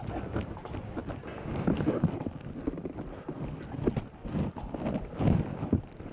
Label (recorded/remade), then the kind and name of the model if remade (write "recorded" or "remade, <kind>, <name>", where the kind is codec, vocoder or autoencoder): recorded